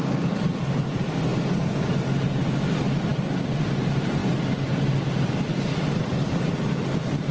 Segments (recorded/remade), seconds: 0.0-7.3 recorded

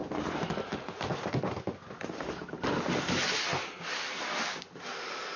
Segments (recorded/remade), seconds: 0.0-5.4 recorded

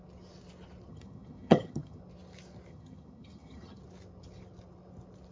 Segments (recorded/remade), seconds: 0.0-0.9 recorded; 0.9-2.0 remade; 2.0-2.7 recorded; 2.7-3.8 remade; 3.8-5.3 recorded

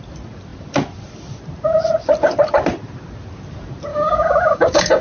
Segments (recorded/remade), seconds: 0.0-3.9 recorded; 3.9-5.0 remade